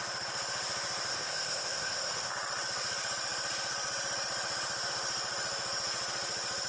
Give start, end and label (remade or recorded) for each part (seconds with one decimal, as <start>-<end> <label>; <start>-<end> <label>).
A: 0.0-1.1 recorded; 1.1-2.3 remade; 2.3-6.7 recorded